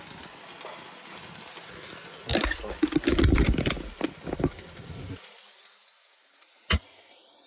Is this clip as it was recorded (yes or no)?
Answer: yes